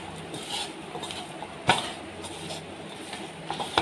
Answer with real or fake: real